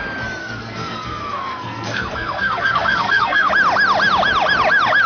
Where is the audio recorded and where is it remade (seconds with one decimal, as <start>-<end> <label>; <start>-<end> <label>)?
0.0-0.4 recorded; 0.4-3.5 remade; 3.5-5.1 recorded